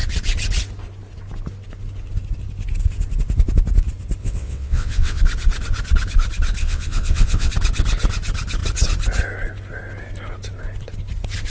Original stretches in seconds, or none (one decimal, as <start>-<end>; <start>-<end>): 0.0-4.2; 5.2-6.6; 7.5-11.5